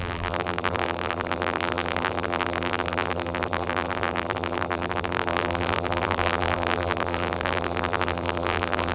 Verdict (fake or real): fake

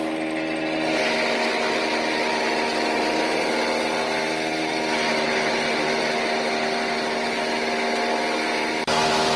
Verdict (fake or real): real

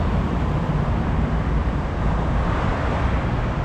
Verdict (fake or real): real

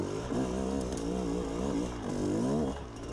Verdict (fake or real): real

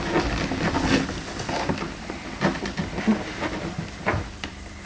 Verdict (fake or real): real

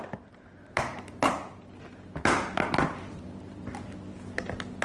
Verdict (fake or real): real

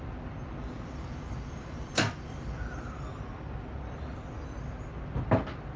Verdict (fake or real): real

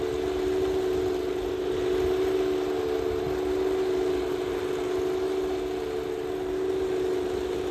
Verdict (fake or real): real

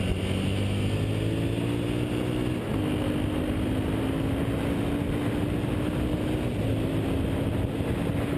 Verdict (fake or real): real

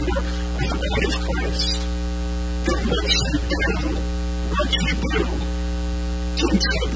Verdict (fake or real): real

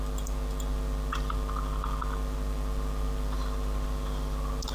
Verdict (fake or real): real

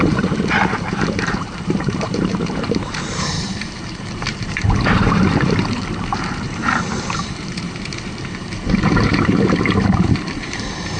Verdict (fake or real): fake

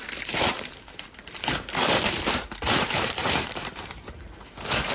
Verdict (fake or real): fake